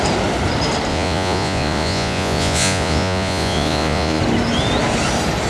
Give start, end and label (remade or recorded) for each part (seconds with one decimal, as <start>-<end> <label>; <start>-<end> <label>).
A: 0.0-0.9 recorded; 0.9-4.2 remade; 4.2-5.5 recorded

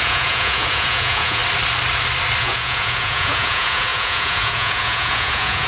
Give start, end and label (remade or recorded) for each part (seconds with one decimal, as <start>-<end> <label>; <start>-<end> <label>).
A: 0.0-1.4 remade; 1.4-2.4 recorded; 2.4-5.7 remade